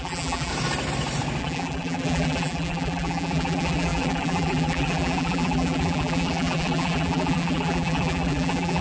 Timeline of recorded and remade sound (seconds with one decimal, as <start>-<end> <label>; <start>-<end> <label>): 0.0-0.5 remade; 0.5-1.4 recorded; 1.4-8.8 remade